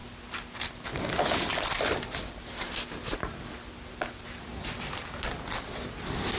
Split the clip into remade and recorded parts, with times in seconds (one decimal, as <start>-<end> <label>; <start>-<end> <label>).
0.0-6.4 recorded